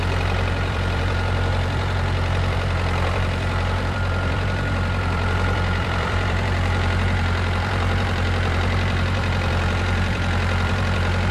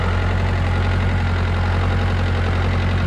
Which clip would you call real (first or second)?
second